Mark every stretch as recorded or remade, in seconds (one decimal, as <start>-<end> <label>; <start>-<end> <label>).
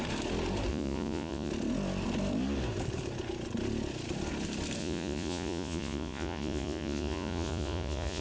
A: 0.0-0.7 recorded; 0.7-1.5 remade; 1.5-4.8 recorded; 4.8-8.2 remade